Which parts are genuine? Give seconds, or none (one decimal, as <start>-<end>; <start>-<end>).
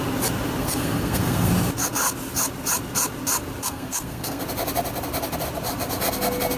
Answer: 0.0-0.6; 1.5-3.6; 4.4-6.6